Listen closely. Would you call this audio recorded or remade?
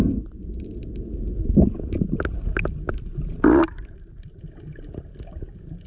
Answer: recorded